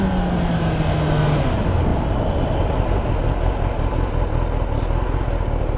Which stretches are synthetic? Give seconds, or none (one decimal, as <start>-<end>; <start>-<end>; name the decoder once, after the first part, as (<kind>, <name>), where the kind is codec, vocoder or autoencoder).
none